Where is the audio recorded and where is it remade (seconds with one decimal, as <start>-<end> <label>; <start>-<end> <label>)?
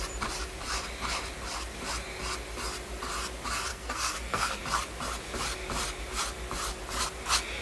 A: 0.0-3.7 recorded; 3.7-4.6 remade; 4.6-7.6 recorded